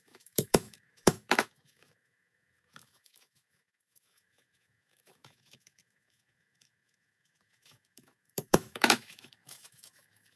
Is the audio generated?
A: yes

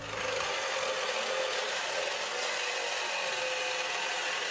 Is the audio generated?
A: no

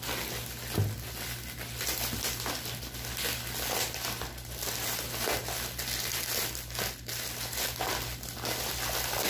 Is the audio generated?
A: no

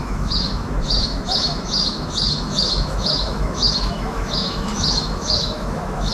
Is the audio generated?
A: yes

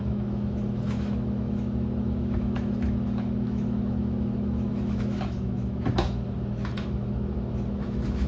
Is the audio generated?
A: yes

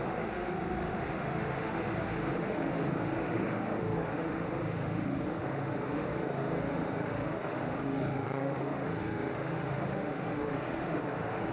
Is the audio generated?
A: yes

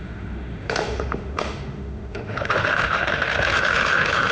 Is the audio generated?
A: yes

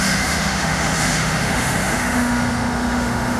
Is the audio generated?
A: yes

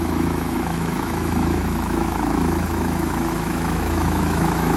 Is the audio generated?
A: yes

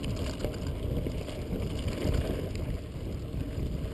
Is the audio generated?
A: no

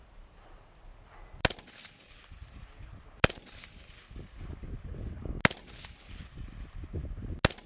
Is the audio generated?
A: no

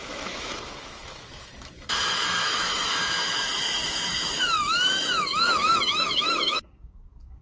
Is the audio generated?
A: yes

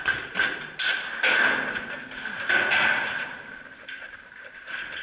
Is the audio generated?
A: no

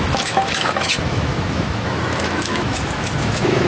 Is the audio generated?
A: yes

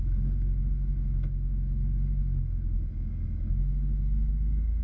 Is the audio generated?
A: yes